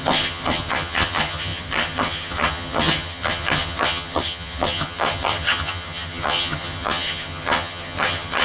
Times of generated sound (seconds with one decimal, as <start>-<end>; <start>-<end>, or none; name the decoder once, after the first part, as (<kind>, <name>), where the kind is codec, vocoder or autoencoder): 0.0-8.4 (vocoder, HiFi-GAN)